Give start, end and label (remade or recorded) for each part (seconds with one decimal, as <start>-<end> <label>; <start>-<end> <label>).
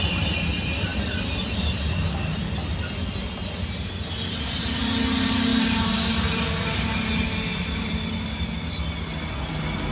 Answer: 0.0-9.9 recorded